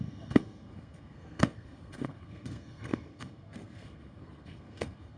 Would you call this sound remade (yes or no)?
yes